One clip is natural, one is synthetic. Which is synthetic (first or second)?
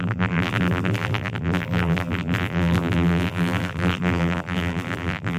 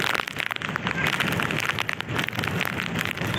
first